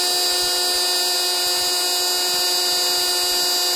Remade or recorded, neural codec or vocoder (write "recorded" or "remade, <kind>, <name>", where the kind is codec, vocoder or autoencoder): recorded